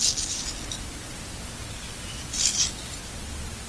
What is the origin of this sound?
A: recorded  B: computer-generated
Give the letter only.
A